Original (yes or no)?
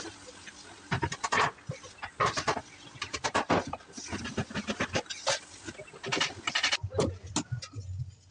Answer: yes